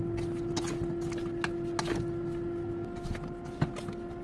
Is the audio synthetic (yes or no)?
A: no